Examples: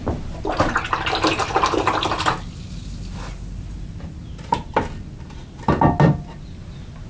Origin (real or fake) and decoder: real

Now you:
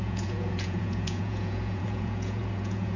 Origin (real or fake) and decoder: fake, vocoder, Vocos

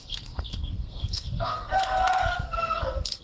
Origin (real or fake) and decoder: fake, codec, SNAC